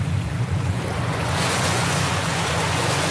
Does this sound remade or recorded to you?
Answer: remade